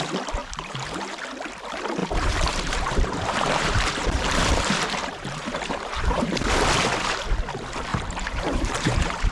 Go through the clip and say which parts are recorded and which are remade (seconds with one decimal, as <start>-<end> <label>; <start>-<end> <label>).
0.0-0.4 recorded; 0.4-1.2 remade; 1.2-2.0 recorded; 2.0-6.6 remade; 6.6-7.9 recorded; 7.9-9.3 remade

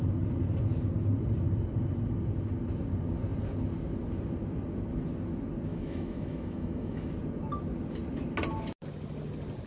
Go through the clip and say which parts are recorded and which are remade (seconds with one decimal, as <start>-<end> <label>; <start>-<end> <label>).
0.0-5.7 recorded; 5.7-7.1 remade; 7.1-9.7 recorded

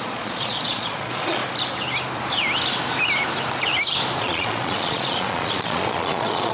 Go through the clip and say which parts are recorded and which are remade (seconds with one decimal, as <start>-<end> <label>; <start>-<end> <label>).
0.0-1.4 remade; 1.4-4.2 recorded; 4.2-6.5 remade

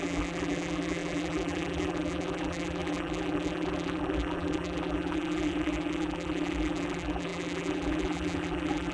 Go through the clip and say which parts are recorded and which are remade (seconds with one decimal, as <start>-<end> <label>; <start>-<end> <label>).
0.0-8.9 remade

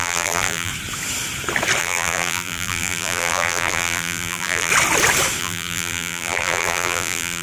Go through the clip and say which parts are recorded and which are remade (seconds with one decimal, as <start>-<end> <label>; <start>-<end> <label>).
0.0-0.7 remade; 0.7-1.8 recorded; 1.8-4.7 remade; 4.7-5.4 recorded; 5.4-7.4 remade

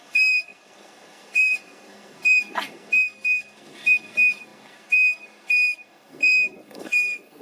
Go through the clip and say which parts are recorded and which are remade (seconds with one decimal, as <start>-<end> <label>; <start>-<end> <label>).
0.0-7.4 remade

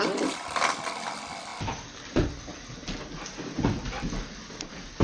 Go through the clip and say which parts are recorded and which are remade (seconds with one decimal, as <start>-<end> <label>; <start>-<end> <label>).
0.0-5.0 recorded

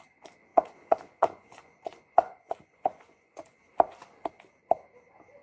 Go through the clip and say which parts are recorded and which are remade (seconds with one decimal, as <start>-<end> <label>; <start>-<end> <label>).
0.0-0.5 recorded; 0.5-3.7 remade; 3.7-5.4 recorded